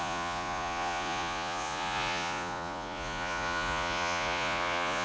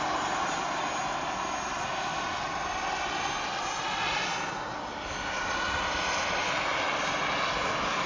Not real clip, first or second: first